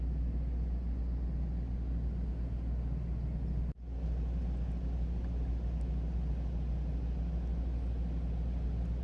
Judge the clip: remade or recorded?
recorded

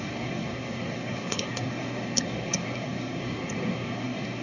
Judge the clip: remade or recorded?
remade